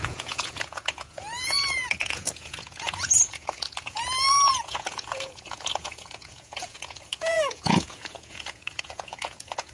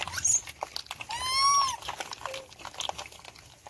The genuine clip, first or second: second